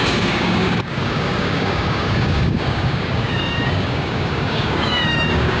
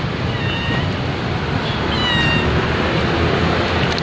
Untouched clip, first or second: second